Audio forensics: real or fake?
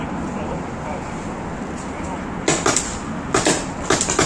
real